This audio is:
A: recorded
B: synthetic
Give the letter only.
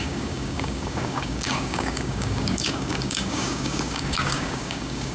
B